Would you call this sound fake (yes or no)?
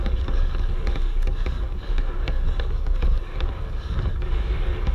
yes